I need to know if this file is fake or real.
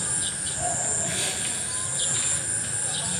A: real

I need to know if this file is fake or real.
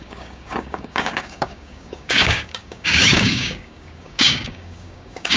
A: fake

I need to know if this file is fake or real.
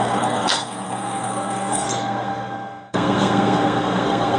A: fake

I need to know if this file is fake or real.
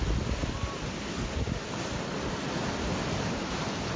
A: real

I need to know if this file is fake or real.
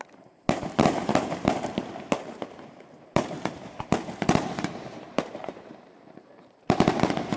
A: fake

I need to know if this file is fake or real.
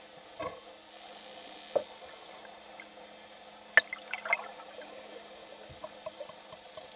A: real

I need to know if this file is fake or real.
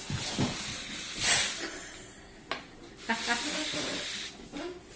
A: real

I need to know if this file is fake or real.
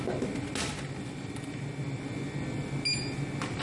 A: real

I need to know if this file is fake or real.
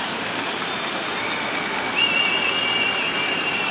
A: real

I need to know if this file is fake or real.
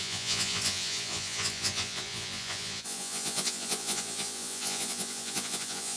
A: fake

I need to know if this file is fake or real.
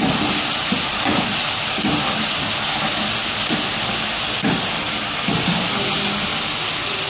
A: real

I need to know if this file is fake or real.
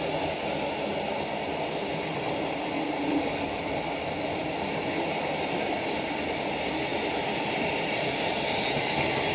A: real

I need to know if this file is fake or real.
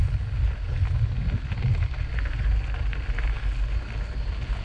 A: real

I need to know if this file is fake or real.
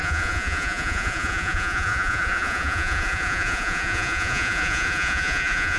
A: fake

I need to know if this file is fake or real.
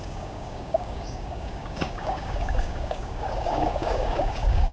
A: fake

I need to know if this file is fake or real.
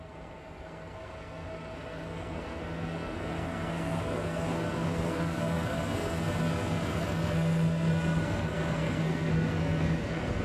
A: fake